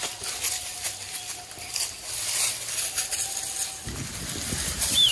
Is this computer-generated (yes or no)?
no